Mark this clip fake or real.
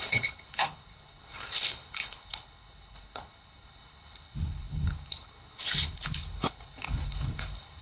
fake